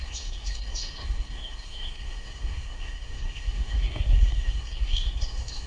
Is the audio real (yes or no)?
no